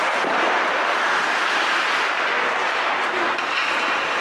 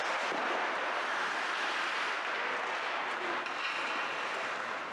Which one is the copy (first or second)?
first